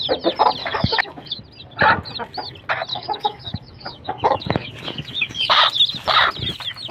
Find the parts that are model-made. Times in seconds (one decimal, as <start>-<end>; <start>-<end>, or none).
0.6-1.4; 2.9-5.6